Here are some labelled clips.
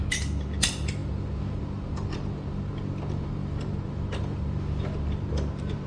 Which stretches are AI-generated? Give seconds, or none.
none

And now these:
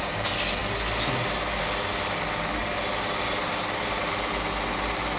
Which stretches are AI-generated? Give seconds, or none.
none

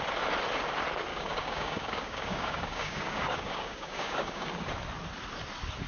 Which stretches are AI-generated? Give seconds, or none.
1.1-4.6 (codec, DAC)